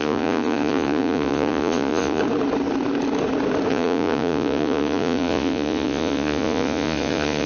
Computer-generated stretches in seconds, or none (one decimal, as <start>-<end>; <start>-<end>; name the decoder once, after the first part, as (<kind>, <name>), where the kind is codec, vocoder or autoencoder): 0.0-2.2 (vocoder, Vocos); 3.7-7.5